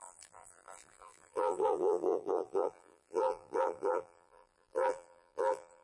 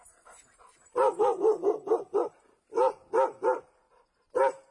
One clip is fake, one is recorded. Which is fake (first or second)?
first